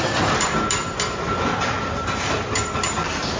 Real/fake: real